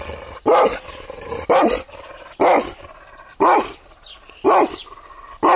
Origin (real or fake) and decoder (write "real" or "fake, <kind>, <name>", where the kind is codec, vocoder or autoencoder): real